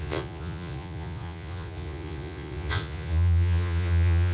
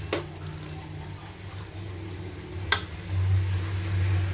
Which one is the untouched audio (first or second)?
second